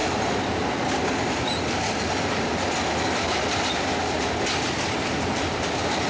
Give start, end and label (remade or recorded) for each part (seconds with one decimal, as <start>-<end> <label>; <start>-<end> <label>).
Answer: 0.0-6.1 recorded